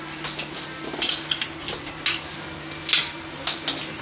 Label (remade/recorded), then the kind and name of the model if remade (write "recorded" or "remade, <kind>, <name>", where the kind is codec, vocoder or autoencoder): recorded